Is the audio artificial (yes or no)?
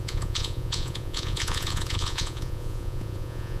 yes